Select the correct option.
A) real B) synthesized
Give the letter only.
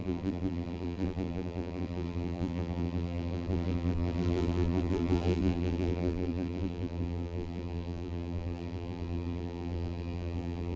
B